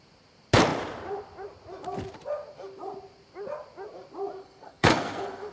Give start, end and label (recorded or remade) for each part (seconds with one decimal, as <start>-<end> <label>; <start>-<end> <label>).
0.0-4.4 recorded; 4.4-5.5 remade